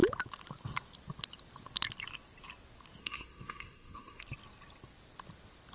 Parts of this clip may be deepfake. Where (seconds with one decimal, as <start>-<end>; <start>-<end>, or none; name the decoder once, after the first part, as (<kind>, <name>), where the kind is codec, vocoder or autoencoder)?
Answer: 3.0-4.2 (codec, SNAC)